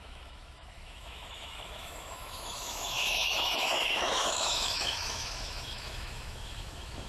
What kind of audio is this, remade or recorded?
remade